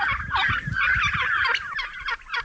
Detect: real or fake real